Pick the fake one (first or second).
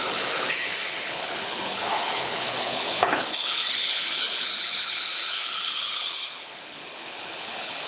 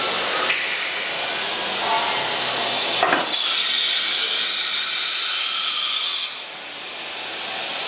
first